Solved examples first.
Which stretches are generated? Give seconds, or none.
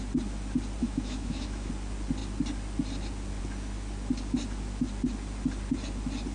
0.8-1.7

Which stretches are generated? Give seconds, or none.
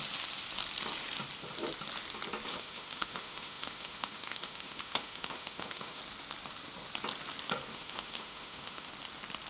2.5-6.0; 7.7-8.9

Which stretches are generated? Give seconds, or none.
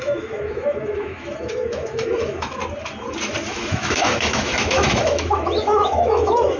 0.0-2.6; 3.5-6.6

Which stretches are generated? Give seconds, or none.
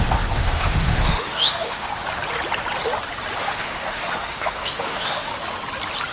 0.0-1.9; 3.4-5.3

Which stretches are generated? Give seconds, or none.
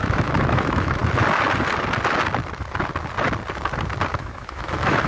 0.0-1.0; 4.1-5.1